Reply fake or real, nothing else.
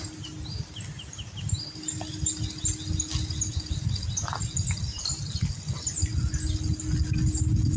real